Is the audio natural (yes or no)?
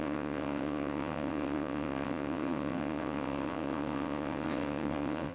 no